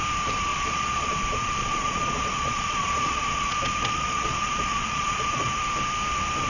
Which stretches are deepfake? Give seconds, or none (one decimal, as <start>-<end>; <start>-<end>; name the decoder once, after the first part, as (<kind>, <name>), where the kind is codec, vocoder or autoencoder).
0.5-1.1 (vocoder, Vocos); 1.6-5.5